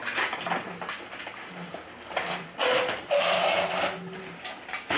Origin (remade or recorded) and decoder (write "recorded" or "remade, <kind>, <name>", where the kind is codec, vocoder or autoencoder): recorded